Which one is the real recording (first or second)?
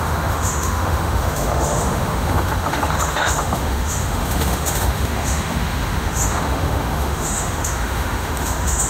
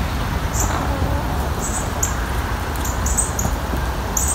second